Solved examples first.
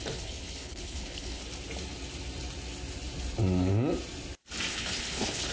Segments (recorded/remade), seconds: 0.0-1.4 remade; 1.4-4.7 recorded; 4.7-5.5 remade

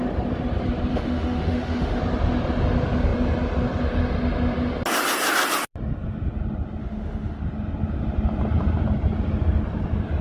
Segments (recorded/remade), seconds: 0.0-0.9 recorded; 0.9-2.0 remade; 2.0-6.8 recorded; 6.8-7.4 remade; 7.4-10.2 recorded

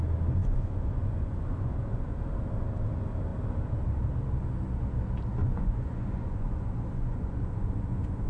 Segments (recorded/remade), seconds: 0.0-0.4 recorded; 0.4-2.2 remade; 2.2-5.4 recorded; 5.4-8.3 remade